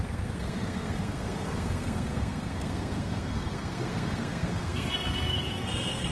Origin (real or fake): fake